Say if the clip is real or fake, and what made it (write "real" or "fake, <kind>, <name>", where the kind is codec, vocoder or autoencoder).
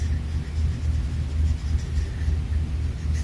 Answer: real